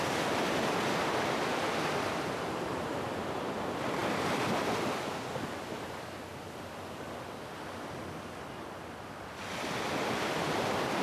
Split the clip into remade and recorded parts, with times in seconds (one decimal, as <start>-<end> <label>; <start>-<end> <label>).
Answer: 0.0-11.0 recorded

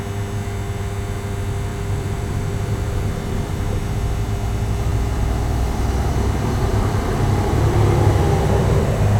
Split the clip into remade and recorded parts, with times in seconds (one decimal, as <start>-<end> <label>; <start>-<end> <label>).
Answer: 0.0-1.7 recorded; 1.7-3.5 remade; 3.5-4.9 recorded; 4.9-6.1 remade; 6.1-6.7 recorded; 6.7-7.8 remade; 7.8-9.2 recorded

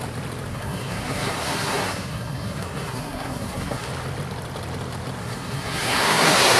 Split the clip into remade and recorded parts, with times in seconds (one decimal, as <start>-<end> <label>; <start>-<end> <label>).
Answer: 0.0-0.5 recorded; 0.5-3.9 remade; 3.9-5.2 recorded; 5.2-6.6 remade

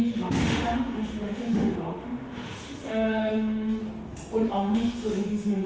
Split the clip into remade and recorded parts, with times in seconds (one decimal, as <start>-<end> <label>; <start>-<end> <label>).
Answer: 0.0-3.8 remade; 3.8-4.5 recorded; 4.5-5.7 remade

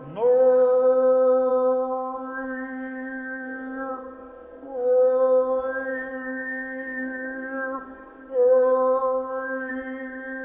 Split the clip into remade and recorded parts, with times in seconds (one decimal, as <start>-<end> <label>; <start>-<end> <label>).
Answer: 0.0-1.5 recorded; 1.5-3.9 remade; 3.9-5.9 recorded; 5.9-8.2 remade; 8.2-9.0 recorded; 9.0-9.7 remade; 9.7-10.4 recorded

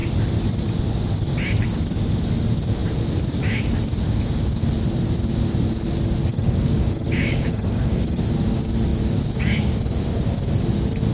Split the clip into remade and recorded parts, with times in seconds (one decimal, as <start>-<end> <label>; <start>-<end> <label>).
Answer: 0.0-6.3 recorded; 6.3-8.2 remade; 8.2-11.1 recorded

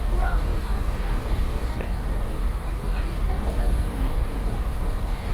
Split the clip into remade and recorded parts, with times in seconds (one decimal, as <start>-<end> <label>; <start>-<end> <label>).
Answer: 0.0-5.3 remade

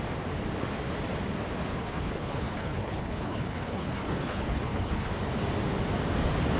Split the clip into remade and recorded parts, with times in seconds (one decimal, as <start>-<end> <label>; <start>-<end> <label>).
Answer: 0.0-1.7 recorded; 1.7-5.1 remade; 5.1-6.6 recorded